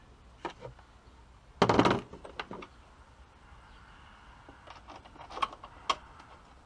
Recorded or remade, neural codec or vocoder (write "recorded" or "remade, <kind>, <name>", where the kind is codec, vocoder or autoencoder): recorded